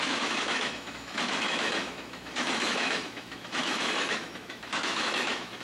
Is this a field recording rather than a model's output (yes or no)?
no